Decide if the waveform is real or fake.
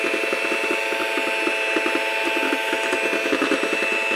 real